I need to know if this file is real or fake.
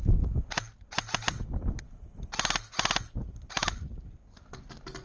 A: real